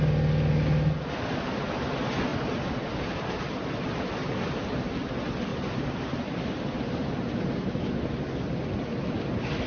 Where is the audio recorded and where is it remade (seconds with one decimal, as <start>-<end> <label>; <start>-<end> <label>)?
0.0-2.3 recorded; 2.3-3.4 remade; 3.4-5.5 recorded; 5.5-7.8 remade; 7.8-9.7 recorded